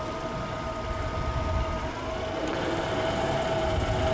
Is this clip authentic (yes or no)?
yes